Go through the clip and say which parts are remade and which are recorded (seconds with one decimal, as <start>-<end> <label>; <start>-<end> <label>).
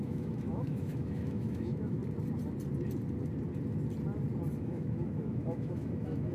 0.0-2.0 remade; 2.0-4.5 recorded; 4.5-6.3 remade